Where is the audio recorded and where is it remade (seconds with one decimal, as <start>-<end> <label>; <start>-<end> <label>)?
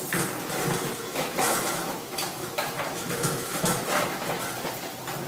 0.0-1.1 recorded; 1.1-4.3 remade; 4.3-5.3 recorded